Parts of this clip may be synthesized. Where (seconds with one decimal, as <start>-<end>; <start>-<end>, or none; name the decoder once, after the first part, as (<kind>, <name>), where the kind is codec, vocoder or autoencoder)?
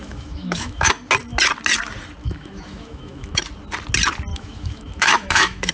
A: 0.0-0.9 (autoencoder, DAC-VAE); 2.2-3.4; 4.3-5.7